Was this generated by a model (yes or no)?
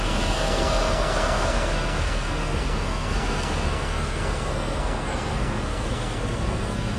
yes